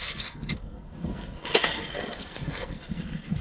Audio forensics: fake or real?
fake